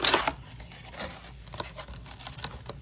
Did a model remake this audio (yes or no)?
no